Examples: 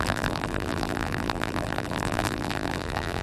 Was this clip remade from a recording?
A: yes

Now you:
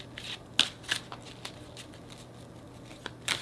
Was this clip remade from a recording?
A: no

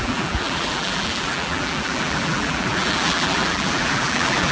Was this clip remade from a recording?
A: yes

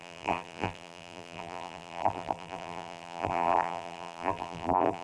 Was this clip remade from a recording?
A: yes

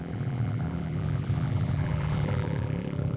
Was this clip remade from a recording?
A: yes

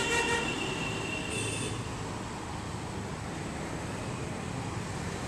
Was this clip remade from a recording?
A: no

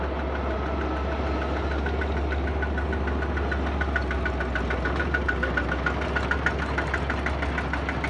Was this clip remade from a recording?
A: no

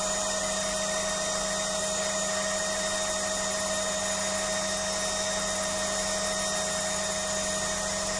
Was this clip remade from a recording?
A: no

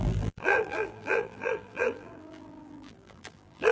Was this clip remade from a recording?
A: yes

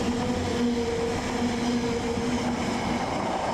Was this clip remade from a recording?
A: no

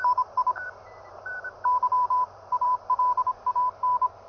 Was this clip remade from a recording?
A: yes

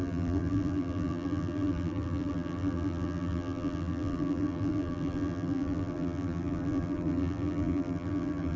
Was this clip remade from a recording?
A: yes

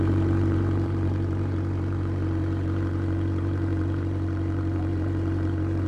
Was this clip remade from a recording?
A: yes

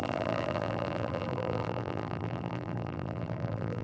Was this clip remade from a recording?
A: yes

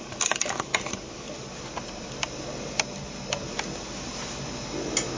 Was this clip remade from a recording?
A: no